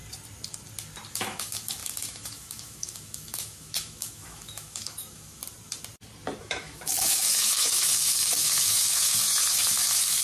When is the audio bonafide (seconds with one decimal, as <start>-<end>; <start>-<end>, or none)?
0.0-1.1; 5.4-6.4